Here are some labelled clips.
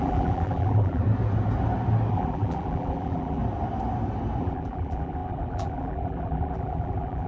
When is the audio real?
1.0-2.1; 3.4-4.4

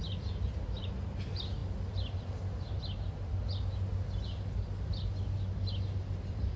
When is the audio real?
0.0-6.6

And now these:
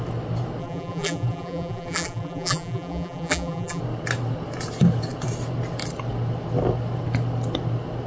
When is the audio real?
0.0-0.6; 3.8-8.1

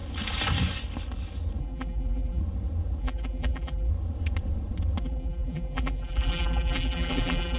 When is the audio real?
0.0-1.6; 2.4-3.0; 3.9-5.0

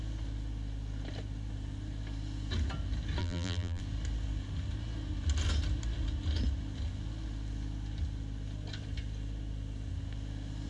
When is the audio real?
0.0-3.2; 3.8-10.7